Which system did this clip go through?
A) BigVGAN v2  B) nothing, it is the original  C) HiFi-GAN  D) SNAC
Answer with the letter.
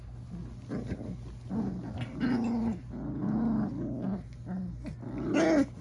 B